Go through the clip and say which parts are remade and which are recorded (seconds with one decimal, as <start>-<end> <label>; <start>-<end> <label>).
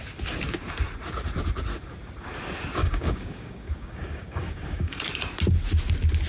0.0-2.8 recorded; 2.8-5.1 remade; 5.1-6.3 recorded